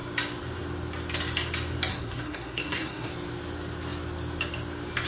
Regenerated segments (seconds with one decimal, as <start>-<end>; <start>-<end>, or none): 1.9-3.1